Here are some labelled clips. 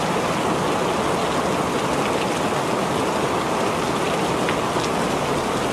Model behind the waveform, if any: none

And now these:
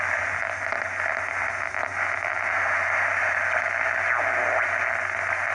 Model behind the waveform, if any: none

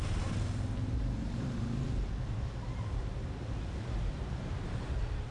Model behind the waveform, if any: vocoder, BigVGAN v2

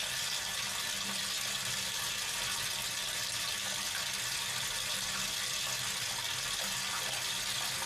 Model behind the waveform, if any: none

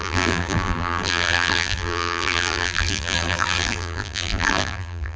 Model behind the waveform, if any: vocoder, BigVGAN v2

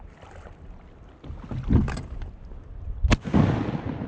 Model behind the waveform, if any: none